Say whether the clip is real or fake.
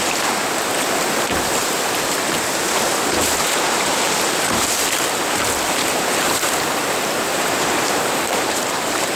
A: fake